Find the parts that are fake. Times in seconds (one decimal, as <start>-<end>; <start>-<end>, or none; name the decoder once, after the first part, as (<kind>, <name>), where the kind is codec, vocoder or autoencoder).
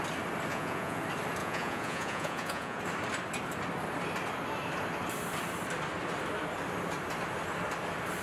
0.5-1.0 (vocoder, Vocos); 1.4-2.8